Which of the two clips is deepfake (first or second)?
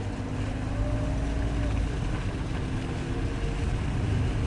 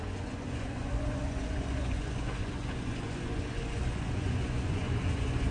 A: second